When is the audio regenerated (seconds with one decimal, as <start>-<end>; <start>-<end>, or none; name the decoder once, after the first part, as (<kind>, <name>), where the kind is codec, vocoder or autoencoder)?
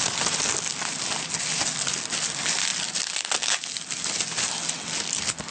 none